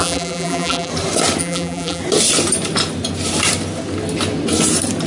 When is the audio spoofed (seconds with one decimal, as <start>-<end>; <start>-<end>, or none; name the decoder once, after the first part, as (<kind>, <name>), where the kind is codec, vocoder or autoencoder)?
0.0-0.9 (vocoder, BigVGAN v2); 1.4-2.0